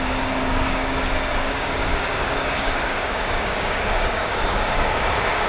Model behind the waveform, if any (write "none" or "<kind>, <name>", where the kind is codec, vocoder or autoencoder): codec, DAC